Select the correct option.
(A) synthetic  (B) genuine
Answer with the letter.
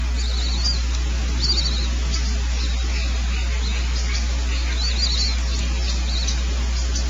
B